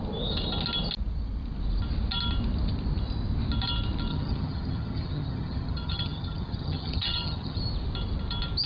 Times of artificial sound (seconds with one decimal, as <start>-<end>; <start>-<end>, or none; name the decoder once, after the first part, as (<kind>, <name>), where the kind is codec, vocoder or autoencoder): 4.1-7.6 (vocoder, HiFi-GAN)